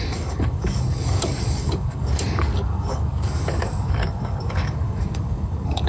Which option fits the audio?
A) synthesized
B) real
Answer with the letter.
A